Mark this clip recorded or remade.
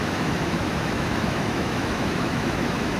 remade